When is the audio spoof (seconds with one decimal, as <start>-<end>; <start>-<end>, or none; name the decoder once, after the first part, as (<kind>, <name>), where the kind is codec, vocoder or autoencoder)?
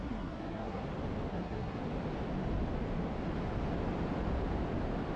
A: 0.0-0.8 (codec, SNAC); 1.3-1.8